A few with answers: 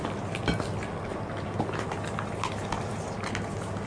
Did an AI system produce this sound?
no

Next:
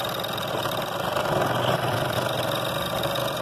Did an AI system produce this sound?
no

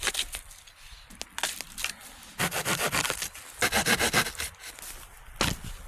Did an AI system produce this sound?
no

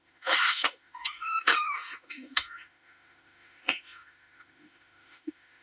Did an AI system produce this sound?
yes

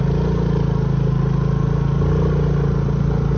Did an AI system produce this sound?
no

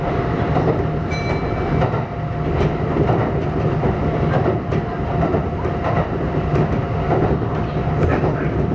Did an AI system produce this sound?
no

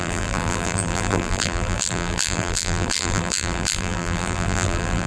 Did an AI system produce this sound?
yes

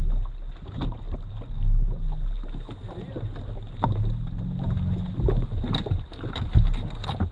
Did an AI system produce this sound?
no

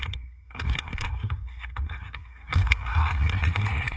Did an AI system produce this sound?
yes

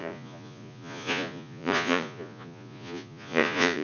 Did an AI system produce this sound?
yes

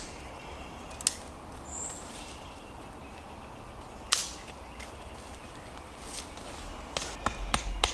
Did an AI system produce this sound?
no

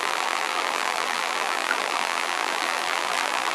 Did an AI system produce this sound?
yes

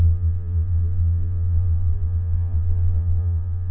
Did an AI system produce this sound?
yes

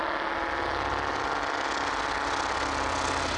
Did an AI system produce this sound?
no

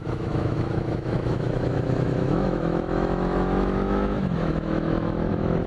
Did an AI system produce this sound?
yes